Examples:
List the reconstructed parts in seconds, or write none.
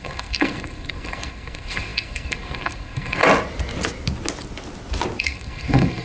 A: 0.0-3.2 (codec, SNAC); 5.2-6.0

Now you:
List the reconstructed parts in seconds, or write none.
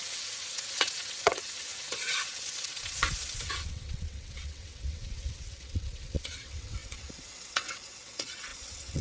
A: 0.0-9.0 (vocoder, WaveNeXt)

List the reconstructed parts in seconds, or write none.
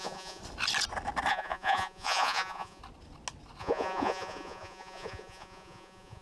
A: 0.0-0.4 (vocoder, Vocos); 1.3-2.8; 3.6-6.2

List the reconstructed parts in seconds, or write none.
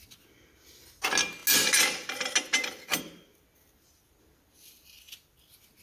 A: none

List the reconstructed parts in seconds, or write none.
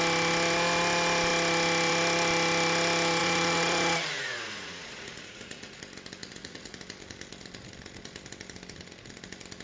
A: 3.2-5.8 (vocoder, Vocos); 6.2-6.8